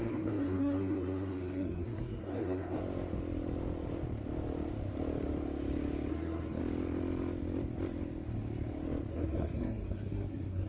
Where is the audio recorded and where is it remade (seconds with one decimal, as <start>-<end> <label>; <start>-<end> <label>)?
0.0-2.8 remade; 2.8-6.1 recorded; 6.1-6.6 remade; 6.6-9.1 recorded; 9.1-10.7 remade